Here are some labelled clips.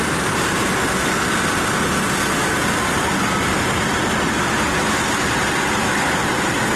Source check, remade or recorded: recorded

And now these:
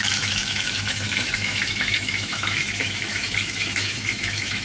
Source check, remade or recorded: remade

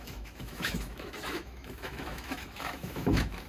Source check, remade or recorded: remade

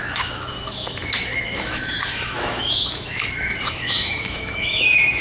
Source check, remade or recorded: remade